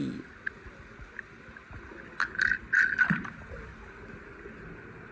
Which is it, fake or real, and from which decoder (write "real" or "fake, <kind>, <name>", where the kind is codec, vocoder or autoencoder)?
real